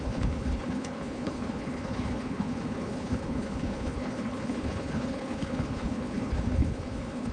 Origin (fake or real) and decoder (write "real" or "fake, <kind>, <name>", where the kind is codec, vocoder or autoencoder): fake, codec, HILCodec